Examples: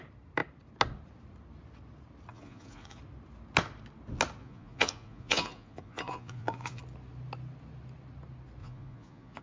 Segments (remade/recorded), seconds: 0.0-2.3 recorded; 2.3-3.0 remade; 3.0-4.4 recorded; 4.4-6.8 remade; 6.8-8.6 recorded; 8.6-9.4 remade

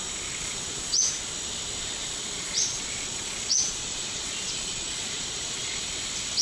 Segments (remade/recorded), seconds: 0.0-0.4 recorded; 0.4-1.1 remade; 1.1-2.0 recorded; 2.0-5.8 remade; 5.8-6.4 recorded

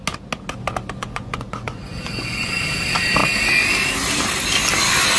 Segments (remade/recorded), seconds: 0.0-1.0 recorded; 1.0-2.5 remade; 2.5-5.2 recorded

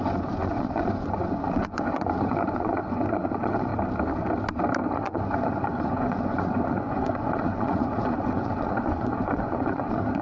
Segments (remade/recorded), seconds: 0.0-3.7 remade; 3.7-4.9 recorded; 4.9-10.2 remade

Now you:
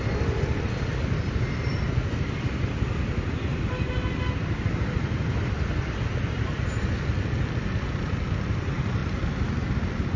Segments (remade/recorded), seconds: 0.0-10.2 recorded

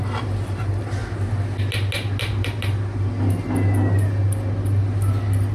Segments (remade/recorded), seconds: 0.0-5.5 recorded

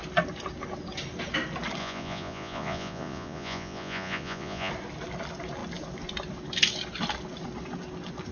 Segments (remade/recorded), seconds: 0.0-1.8 recorded; 1.8-4.7 remade; 4.7-8.3 recorded